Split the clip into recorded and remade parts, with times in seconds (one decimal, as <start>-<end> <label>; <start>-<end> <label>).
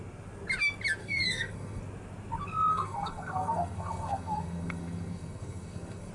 0.0-1.0 recorded; 1.0-1.8 remade; 1.8-2.7 recorded; 2.7-6.1 remade